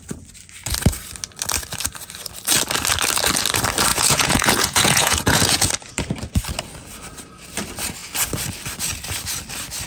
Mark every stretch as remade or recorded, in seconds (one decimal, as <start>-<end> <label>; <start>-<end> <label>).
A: 0.0-3.9 recorded; 3.9-5.7 remade; 5.7-9.9 recorded